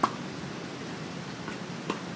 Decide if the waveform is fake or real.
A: real